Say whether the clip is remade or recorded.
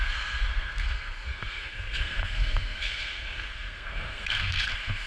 remade